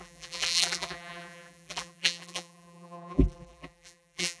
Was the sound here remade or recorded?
remade